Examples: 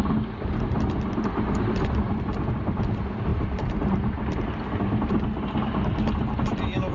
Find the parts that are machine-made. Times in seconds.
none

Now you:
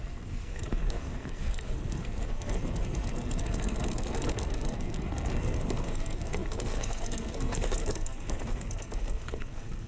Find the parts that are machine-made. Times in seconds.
0.0-9.9 (codec, SNAC)

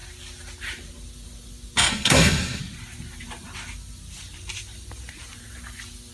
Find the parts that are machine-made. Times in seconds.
1.9-2.6 (codec, SNAC)

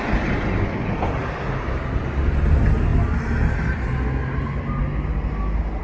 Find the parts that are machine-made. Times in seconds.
none

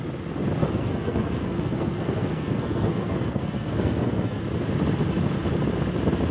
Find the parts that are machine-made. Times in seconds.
0.6-4.4 (codec, SNAC)

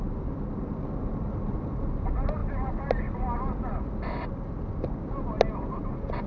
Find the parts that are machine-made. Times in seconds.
none

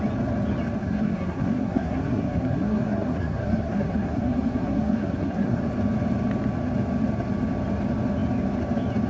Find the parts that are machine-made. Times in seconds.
0.8-5.6 (codec, SNAC)

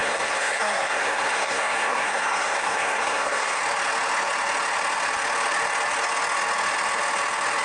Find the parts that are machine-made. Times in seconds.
0.0-3.6 (codec, SNAC)